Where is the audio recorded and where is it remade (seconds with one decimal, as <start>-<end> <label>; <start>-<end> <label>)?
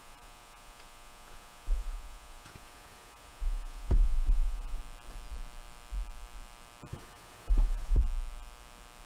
0.0-4.8 remade; 4.8-6.9 recorded; 6.9-8.0 remade; 8.0-9.1 recorded